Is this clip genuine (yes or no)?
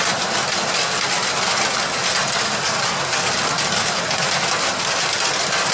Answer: yes